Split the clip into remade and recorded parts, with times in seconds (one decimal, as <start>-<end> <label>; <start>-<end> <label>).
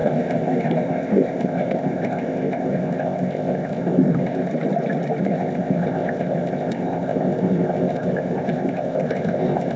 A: 0.0-4.5 remade; 4.5-5.2 recorded; 5.2-9.8 remade